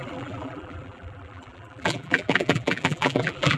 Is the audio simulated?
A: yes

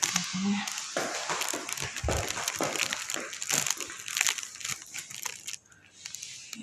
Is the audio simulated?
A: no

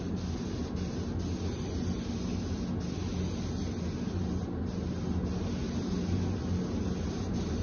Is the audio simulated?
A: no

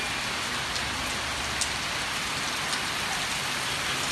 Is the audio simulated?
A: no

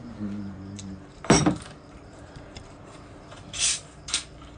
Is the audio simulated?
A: yes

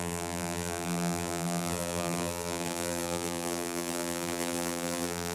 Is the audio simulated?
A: yes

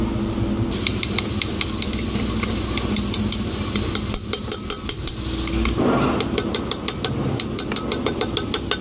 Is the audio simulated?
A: no